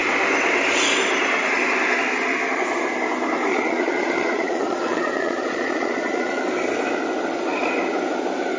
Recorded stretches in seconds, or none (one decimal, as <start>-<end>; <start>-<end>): 0.0-3.5; 6.4-8.6